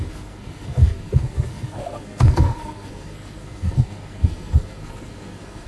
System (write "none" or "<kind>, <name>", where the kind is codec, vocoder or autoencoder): codec, SNAC